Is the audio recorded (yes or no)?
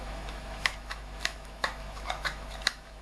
no